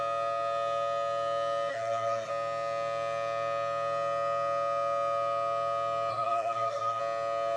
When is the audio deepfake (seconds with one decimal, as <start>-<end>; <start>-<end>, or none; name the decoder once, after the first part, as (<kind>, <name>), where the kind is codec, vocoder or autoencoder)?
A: 1.7-2.3 (codec, SNAC); 6.1-7.0

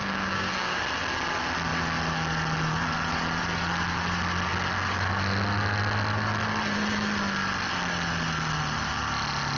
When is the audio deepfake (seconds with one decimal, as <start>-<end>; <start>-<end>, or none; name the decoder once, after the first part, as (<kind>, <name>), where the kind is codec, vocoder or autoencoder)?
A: 0.0-0.8 (codec, DAC)